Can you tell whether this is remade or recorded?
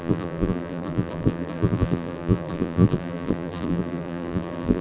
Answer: remade